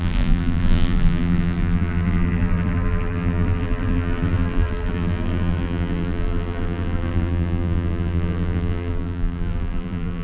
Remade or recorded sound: remade